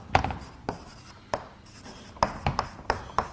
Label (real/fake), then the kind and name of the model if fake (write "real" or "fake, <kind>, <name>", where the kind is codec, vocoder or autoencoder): real